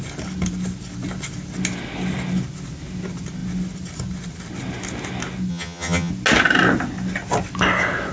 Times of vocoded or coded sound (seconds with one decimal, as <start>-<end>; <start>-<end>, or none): 5.5-6.1